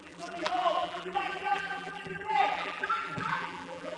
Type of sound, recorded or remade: remade